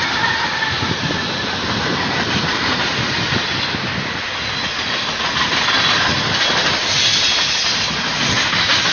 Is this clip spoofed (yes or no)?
no